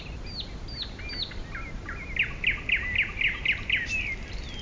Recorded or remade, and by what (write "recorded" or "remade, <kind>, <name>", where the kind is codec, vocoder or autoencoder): recorded